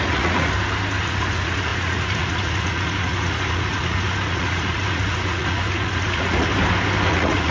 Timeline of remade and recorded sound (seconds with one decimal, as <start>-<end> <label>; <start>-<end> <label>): 0.0-0.5 remade; 0.5-1.0 recorded; 1.0-6.5 remade; 6.5-7.1 recorded; 7.1-7.5 remade